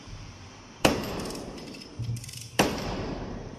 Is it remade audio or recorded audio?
remade